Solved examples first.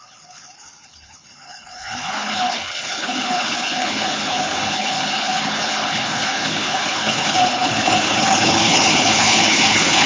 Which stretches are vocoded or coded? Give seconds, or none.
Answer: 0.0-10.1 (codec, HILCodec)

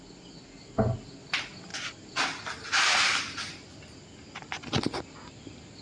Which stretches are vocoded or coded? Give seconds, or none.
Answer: none

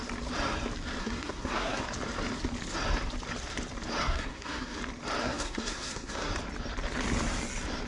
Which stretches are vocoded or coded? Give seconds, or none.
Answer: 1.0-1.8 (codec, SNAC); 4.0-4.8; 5.2-6.3

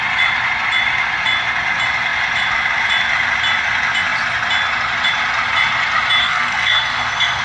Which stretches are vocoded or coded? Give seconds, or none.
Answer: 6.2-7.4 (codec, SNAC)

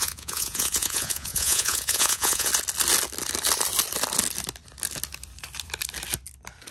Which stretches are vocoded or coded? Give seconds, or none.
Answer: 0.0-2.5 (vocoder, Vocos)

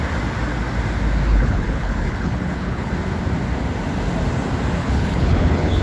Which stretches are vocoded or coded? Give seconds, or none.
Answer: 1.3-2.9 (codec, HILCodec); 4.8-5.8